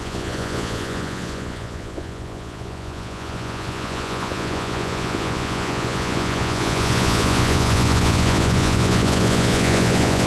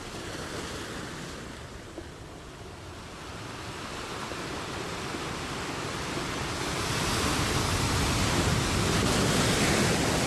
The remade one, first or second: first